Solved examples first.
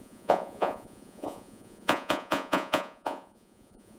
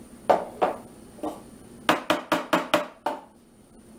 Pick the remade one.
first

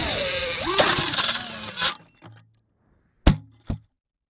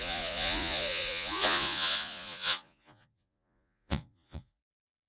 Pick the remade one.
second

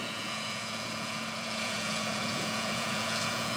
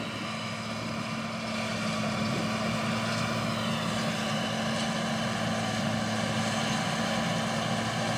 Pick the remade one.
first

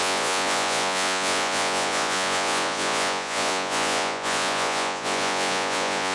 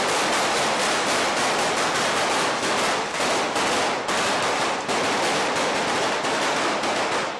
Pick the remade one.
first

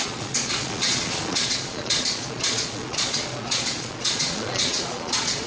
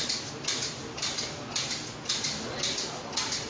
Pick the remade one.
first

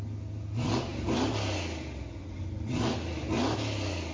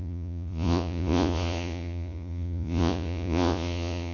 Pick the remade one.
second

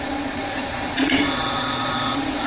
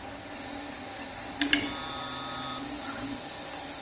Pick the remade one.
first